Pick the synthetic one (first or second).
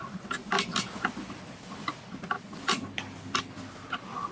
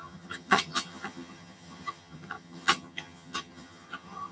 second